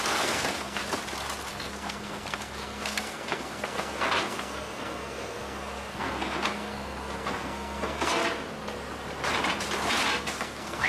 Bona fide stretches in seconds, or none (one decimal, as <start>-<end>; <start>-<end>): 0.8-1.5; 8.2-10.2